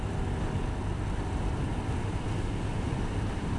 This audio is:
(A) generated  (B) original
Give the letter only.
B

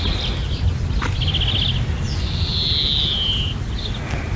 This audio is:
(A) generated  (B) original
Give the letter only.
B